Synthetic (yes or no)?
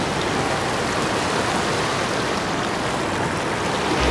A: no